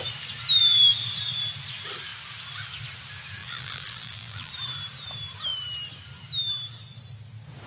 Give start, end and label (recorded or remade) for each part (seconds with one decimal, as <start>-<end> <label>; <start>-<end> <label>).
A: 0.0-3.4 recorded; 3.4-4.5 remade; 4.5-7.7 recorded

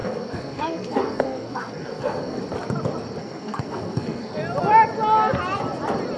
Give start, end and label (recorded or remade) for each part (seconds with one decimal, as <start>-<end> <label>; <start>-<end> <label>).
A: 0.0-2.4 remade; 2.4-3.2 recorded; 3.2-4.4 remade; 4.4-6.2 recorded

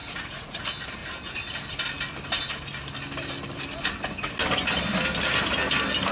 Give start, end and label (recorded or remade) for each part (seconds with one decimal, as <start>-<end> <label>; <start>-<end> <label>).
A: 0.0-0.6 remade; 0.6-6.1 recorded

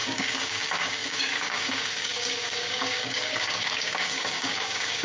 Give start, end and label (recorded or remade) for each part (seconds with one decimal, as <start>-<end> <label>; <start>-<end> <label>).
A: 0.0-5.0 remade

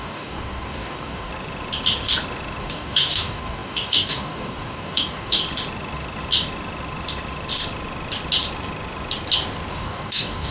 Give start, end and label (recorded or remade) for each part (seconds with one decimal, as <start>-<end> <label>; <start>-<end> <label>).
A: 0.0-1.3 remade; 1.3-2.6 recorded; 2.6-5.4 remade; 5.4-9.7 recorded; 9.7-10.5 remade

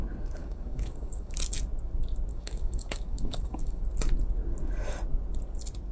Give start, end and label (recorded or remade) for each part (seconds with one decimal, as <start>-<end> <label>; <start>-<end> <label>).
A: 0.0-0.4 recorded; 0.4-1.3 remade; 1.3-2.3 recorded; 2.3-3.8 remade; 3.8-5.9 recorded